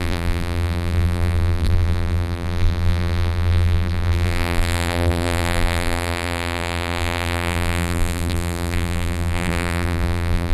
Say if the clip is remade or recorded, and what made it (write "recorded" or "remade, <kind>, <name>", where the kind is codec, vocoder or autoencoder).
remade, vocoder, BigVGAN v2